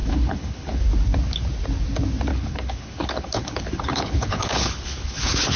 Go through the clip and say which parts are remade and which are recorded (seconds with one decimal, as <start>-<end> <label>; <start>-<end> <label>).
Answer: 0.0-0.8 remade; 0.8-2.3 recorded; 2.3-5.6 remade